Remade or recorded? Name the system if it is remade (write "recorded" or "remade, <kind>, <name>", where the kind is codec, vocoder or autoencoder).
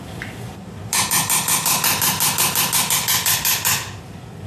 recorded